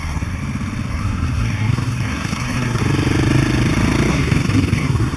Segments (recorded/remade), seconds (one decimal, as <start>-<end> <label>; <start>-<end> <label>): 0.0-0.4 remade; 0.4-0.9 recorded; 0.9-2.8 remade; 2.8-4.1 recorded; 4.1-5.2 remade